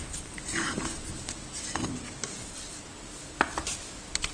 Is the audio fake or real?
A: real